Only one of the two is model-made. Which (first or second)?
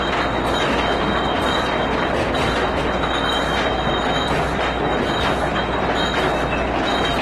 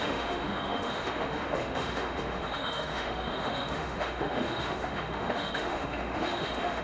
second